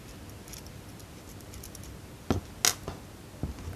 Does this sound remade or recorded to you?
recorded